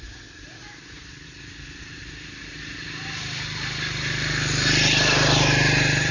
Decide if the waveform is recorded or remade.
recorded